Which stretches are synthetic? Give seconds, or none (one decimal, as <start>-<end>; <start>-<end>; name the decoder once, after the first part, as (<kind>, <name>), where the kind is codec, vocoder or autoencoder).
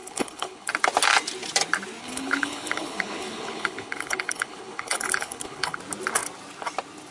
0.0-0.7 (codec, HILCodec); 2.0-5.8